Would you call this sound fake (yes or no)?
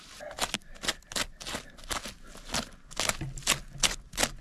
no